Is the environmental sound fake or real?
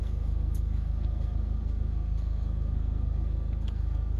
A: fake